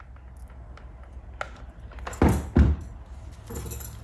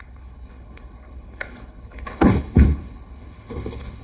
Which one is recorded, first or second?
first